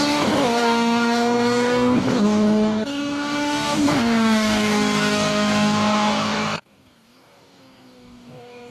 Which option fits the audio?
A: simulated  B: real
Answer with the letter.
A